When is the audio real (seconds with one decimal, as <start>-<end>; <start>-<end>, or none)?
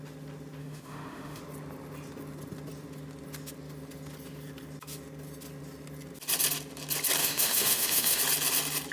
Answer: 0.0-0.6; 1.4-7.2; 8.2-8.9